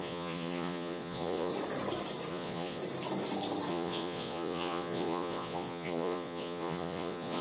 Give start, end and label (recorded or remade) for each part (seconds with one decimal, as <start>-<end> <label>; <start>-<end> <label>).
0.0-1.5 remade; 1.5-2.3 recorded; 2.3-2.8 remade; 2.8-3.7 recorded; 3.7-7.4 remade